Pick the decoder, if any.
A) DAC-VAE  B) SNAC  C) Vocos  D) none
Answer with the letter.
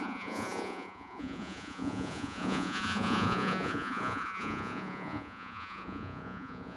C